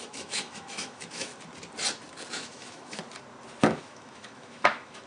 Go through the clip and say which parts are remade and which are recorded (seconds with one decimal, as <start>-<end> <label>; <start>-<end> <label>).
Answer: 0.0-1.3 remade; 1.3-2.3 recorded; 2.3-3.0 remade; 3.0-3.6 recorded; 3.6-5.1 remade